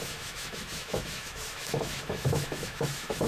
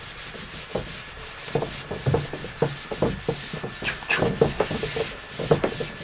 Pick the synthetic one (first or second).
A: first